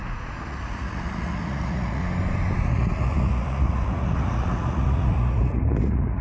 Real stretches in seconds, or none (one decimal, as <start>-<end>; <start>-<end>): 2.0-2.7

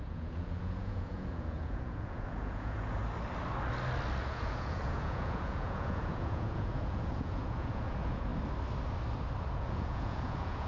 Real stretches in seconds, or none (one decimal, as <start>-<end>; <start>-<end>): 3.0-4.2; 8.3-9.5